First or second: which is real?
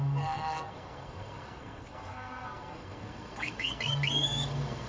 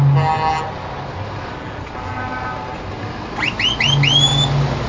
second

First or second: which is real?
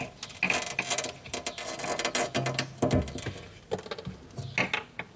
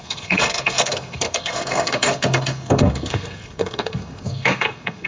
first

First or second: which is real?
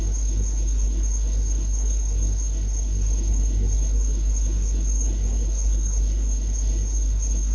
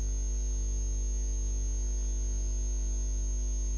second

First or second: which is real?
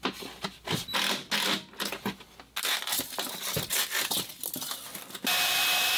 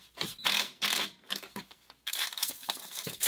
first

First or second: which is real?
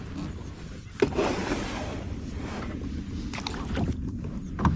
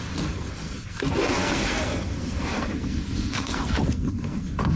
first